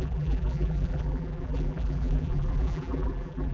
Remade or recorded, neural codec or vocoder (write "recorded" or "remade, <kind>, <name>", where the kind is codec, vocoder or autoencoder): remade, vocoder, BigVGAN v2